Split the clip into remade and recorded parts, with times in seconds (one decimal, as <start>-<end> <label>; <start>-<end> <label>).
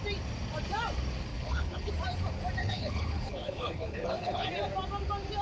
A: 0.0-1.3 recorded; 1.3-1.9 remade; 1.9-2.6 recorded; 2.6-4.5 remade; 4.5-5.4 recorded